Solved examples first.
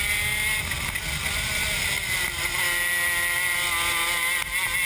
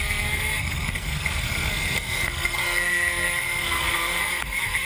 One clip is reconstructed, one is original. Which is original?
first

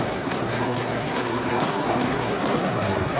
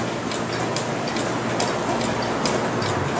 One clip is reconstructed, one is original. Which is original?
second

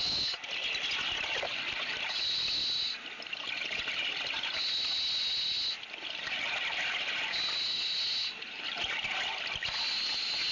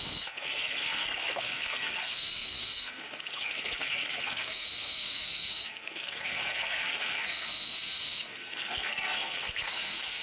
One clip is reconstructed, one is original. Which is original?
first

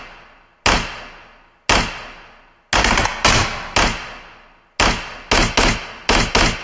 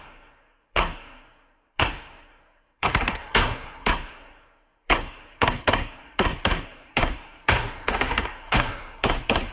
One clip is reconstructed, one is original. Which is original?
first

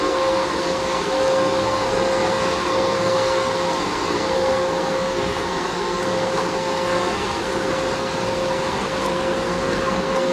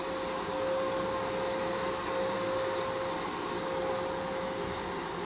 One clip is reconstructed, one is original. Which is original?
second